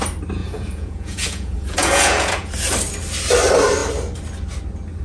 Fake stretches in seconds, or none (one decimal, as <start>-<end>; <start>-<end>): 0.4-2.5